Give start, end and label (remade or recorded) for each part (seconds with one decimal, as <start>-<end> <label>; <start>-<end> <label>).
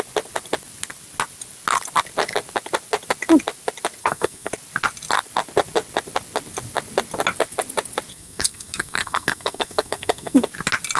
0.0-4.0 recorded; 4.0-4.5 remade; 4.5-8.1 recorded; 8.1-10.5 remade; 10.5-11.0 recorded